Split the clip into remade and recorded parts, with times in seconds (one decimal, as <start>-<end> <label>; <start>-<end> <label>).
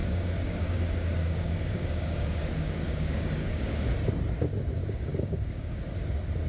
0.0-3.7 remade; 3.7-4.8 recorded; 4.8-5.8 remade; 5.8-6.5 recorded